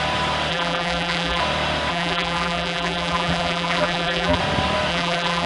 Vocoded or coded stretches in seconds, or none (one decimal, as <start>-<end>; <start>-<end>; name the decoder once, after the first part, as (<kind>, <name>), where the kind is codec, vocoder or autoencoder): 0.5-1.4 (vocoder, BigVGAN v2); 1.9-4.4; 4.9-5.5